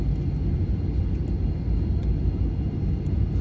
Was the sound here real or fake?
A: real